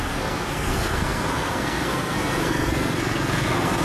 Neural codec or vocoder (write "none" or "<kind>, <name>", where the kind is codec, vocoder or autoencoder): codec, SNAC